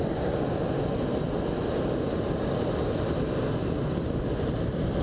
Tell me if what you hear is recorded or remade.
recorded